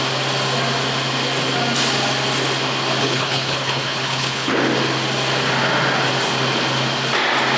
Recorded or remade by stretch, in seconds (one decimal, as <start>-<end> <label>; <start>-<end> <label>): 0.0-3.0 recorded; 3.0-4.5 remade; 4.5-7.6 recorded